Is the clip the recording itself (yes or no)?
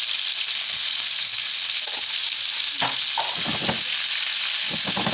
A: yes